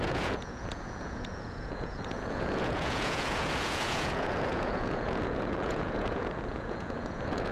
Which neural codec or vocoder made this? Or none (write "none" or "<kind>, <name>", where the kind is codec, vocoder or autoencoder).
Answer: vocoder, Vocos